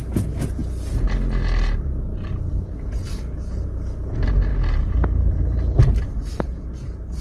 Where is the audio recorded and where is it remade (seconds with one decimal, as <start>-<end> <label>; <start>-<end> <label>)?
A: 0.0-7.2 recorded